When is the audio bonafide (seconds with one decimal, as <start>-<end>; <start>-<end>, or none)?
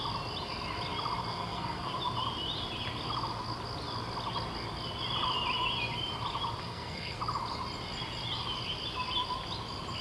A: 0.0-1.3; 1.9-6.6; 7.2-10.0